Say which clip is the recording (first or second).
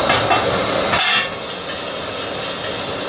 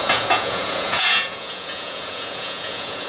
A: first